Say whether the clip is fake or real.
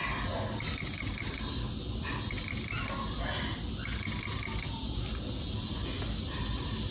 real